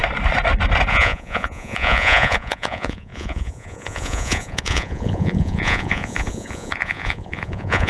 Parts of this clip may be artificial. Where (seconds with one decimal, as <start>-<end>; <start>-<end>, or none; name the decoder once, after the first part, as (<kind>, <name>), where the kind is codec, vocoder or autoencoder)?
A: 0.9-7.9 (vocoder, Vocos)